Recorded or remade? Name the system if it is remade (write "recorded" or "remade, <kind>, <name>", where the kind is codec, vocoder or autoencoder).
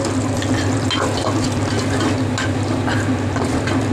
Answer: recorded